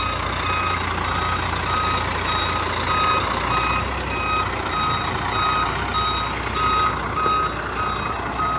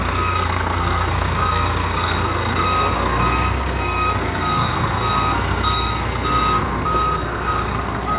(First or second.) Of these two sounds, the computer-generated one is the second